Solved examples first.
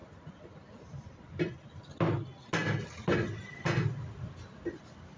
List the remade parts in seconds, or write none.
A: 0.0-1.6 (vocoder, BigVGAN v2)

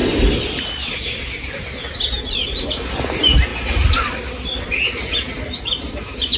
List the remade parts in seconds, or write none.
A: none